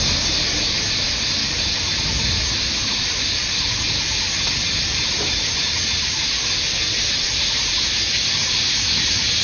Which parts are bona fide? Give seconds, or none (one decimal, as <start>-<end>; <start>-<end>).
0.0-9.4